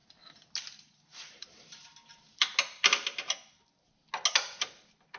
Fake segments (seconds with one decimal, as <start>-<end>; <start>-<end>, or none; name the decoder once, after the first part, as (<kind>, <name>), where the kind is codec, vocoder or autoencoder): 0.8-2.5 (vocoder, BigVGAN v2)